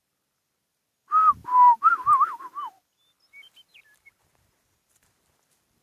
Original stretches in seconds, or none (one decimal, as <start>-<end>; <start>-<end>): 0.0-5.8